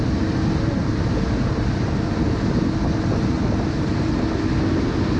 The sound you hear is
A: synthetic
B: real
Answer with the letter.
B